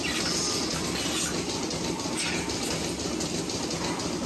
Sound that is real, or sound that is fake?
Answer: real